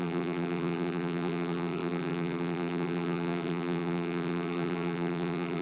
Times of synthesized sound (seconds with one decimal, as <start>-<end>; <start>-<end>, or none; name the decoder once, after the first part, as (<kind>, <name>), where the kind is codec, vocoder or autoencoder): 0.0-5.6 (vocoder, BigVGAN v2)